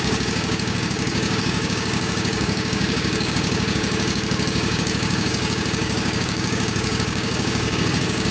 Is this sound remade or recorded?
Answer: remade